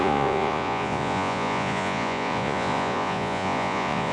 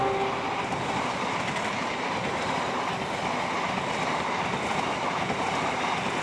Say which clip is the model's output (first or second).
first